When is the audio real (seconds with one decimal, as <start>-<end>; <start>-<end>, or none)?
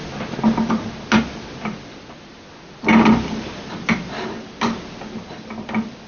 0.0-6.1